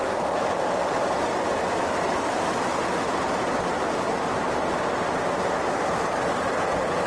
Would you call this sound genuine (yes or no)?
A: yes